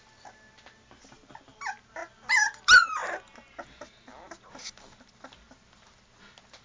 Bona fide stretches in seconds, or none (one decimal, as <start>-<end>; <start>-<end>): 0.0-6.6